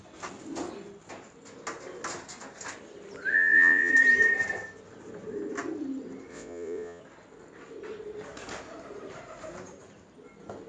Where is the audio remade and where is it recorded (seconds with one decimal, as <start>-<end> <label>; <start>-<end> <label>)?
0.0-3.3 recorded; 3.3-3.9 remade; 3.9-6.3 recorded; 6.3-7.0 remade; 7.0-10.7 recorded